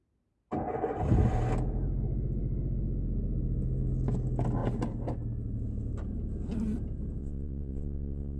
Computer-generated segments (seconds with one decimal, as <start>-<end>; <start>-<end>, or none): 7.2-8.4